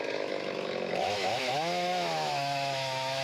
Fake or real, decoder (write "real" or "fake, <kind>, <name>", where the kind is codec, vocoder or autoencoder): fake, autoencoder, DAC-VAE